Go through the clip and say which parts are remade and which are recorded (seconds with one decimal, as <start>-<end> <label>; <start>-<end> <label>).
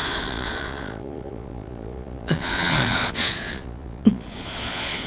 0.0-5.1 remade